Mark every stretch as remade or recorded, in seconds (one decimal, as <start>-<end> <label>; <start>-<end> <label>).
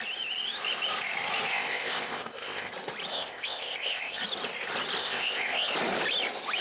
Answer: 0.0-1.5 recorded; 1.5-2.7 remade; 2.7-3.1 recorded; 3.1-4.2 remade; 4.2-5.0 recorded; 5.0-5.7 remade; 5.7-6.6 recorded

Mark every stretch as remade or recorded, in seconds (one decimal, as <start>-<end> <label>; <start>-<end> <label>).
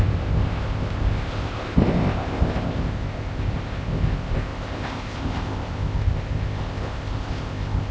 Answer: 0.0-7.9 remade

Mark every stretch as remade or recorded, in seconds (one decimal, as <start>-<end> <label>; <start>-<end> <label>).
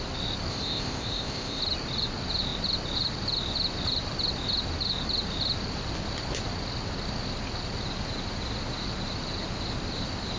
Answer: 0.0-0.5 recorded; 0.5-1.6 remade; 1.6-10.4 recorded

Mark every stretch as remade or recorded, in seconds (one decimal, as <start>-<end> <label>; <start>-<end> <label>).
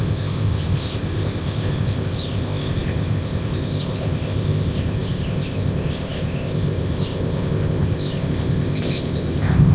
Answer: 0.0-9.7 remade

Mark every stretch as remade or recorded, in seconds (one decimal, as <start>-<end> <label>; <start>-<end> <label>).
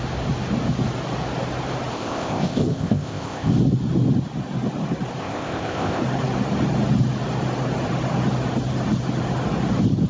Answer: 0.0-1.9 recorded; 1.9-3.5 remade; 3.5-5.2 recorded; 5.2-6.0 remade; 6.0-10.1 recorded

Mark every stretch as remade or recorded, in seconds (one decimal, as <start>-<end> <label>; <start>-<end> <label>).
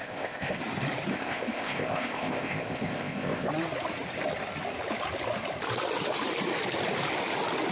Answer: 0.0-0.6 remade; 0.6-1.1 recorded; 1.1-3.5 remade; 3.5-7.7 recorded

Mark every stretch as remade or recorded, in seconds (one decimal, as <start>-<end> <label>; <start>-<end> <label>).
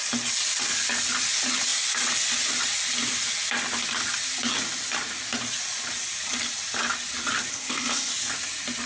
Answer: 0.0-7.5 recorded; 7.5-8.1 remade; 8.1-8.9 recorded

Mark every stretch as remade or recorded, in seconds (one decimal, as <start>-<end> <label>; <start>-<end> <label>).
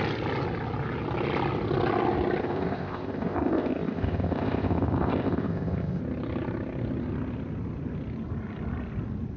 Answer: 0.0-2.4 recorded; 2.4-6.0 remade; 6.0-9.4 recorded